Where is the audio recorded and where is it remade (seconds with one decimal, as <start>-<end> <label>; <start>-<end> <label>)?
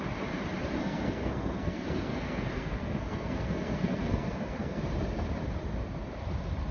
0.0-0.8 recorded; 0.8-4.8 remade; 4.8-6.7 recorded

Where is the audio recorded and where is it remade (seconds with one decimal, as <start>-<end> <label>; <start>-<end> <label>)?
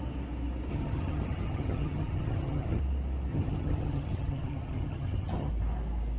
0.0-0.7 recorded; 0.7-2.8 remade; 2.8-3.3 recorded; 3.3-5.5 remade; 5.5-6.2 recorded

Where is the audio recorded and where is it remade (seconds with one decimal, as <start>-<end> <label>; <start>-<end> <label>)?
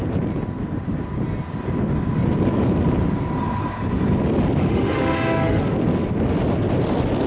0.0-4.6 recorded; 4.6-5.6 remade; 5.6-7.3 recorded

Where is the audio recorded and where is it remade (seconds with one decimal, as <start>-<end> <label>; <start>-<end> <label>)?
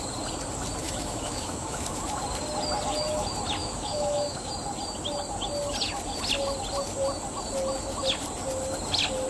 0.0-0.8 recorded; 0.8-2.2 remade; 2.2-3.6 recorded; 3.6-4.5 remade; 4.5-9.3 recorded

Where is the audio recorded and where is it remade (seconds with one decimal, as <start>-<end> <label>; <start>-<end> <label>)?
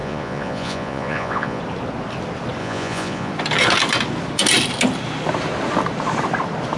0.0-1.6 remade; 1.6-2.6 recorded; 2.6-3.3 remade; 3.3-6.8 recorded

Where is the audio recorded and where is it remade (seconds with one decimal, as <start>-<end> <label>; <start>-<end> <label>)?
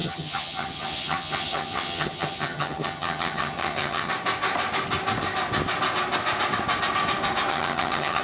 0.0-4.1 remade; 4.1-7.5 recorded; 7.5-8.2 remade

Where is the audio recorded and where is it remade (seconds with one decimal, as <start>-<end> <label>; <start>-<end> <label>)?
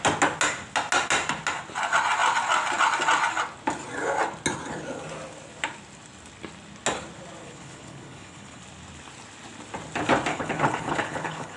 0.0-7.4 recorded; 7.4-8.6 remade; 8.6-10.3 recorded; 10.3-11.6 remade